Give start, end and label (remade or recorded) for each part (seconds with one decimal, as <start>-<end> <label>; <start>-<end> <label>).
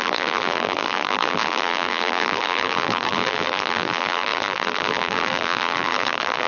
0.0-6.5 remade